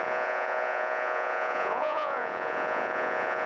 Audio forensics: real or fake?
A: fake